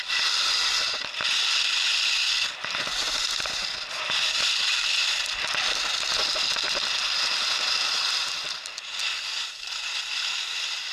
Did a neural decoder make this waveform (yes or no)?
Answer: no